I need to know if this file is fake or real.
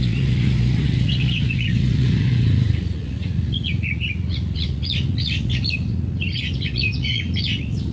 fake